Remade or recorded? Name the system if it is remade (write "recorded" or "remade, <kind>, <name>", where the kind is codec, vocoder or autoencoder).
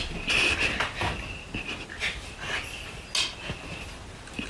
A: recorded